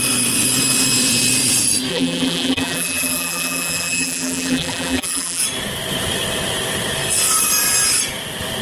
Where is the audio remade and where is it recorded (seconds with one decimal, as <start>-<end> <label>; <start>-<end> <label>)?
0.0-1.9 recorded; 1.9-5.4 remade; 5.4-8.6 recorded

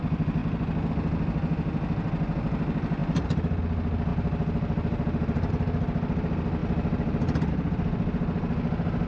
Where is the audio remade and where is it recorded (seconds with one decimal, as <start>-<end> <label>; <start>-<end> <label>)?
0.0-4.1 recorded; 4.1-5.5 remade; 5.5-9.1 recorded

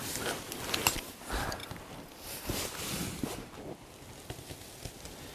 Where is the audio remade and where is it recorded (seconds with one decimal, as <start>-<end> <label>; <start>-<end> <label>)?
0.0-5.3 recorded

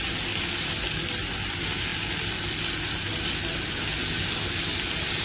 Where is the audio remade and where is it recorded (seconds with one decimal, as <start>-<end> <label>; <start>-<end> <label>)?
0.0-5.2 recorded

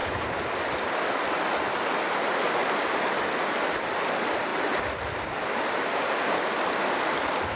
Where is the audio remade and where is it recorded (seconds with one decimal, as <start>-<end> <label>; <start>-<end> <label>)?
0.0-7.6 recorded